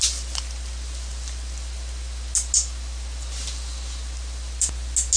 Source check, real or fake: real